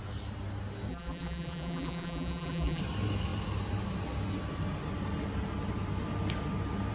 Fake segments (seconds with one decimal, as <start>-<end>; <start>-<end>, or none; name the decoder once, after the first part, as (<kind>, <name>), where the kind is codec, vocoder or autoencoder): 0.9-2.8 (vocoder, BigVGAN v2)